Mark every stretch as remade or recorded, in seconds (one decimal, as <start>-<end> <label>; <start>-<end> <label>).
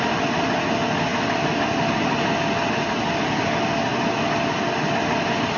0.0-5.6 recorded